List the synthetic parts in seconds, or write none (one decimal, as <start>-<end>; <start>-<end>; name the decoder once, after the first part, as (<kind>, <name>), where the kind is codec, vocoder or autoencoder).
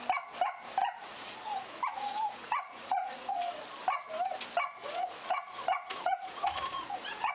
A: 0.8-3.6 (vocoder, Vocos); 4.8-7.3